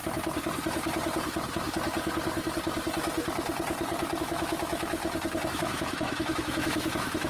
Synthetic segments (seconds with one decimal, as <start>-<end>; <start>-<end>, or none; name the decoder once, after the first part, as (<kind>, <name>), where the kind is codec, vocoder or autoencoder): 4.2-5.0 (autoencoder, DAC-VAE); 5.5-7.3